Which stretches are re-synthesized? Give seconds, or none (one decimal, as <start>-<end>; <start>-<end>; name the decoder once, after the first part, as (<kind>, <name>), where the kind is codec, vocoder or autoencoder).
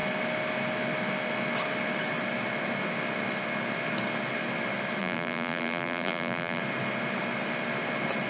5.0-6.6 (vocoder, BigVGAN v2)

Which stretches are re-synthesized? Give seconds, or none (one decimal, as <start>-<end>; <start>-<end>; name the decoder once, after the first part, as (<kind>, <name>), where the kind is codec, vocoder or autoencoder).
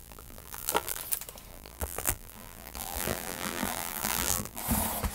0.0-1.0 (vocoder, BigVGAN v2); 1.5-4.6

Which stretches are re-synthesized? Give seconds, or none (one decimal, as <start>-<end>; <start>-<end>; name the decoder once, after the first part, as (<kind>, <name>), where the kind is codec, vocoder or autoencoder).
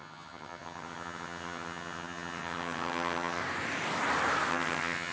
0.0-3.4 (vocoder, HiFi-GAN); 4.5-5.1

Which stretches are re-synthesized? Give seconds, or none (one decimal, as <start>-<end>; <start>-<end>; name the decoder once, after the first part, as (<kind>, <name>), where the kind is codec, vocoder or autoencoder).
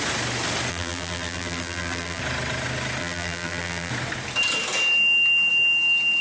0.7-2.2 (vocoder, BigVGAN v2); 3.0-3.9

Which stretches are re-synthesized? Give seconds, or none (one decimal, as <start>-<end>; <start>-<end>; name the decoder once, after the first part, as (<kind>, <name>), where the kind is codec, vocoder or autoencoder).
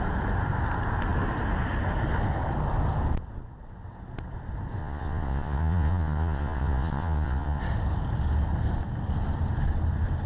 4.8-7.6 (vocoder, Vocos)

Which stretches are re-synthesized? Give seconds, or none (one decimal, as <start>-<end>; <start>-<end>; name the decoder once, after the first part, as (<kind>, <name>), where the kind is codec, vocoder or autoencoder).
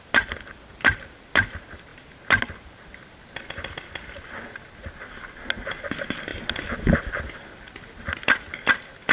none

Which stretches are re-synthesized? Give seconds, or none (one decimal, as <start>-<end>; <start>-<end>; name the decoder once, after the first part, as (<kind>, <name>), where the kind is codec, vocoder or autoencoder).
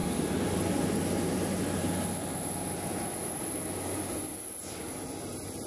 none